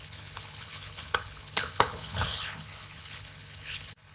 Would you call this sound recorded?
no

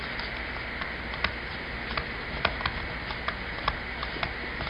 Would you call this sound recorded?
yes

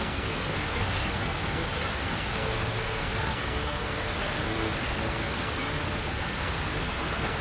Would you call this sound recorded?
no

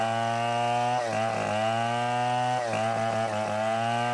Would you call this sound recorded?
yes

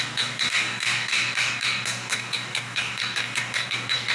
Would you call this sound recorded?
no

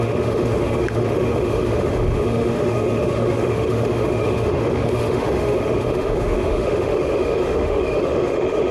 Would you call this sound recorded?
no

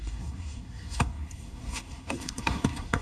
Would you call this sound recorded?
no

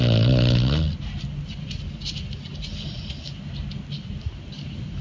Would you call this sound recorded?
yes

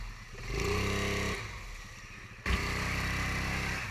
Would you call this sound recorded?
yes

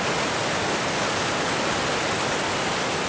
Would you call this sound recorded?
yes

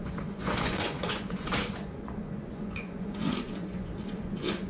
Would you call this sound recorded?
no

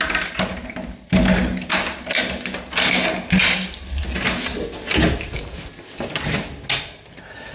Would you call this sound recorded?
yes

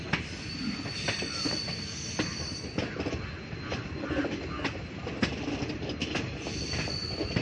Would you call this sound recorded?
yes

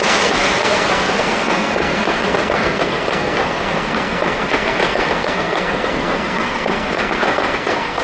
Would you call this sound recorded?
no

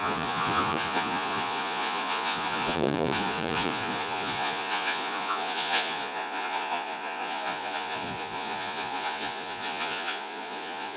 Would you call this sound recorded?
no